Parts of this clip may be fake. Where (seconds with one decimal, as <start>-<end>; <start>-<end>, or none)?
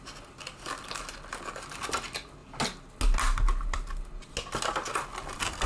none